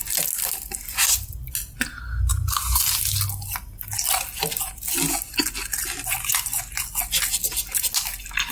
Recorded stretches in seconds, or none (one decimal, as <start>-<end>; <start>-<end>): 0.0-2.3; 3.0-8.5